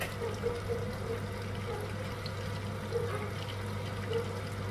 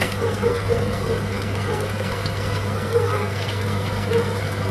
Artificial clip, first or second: second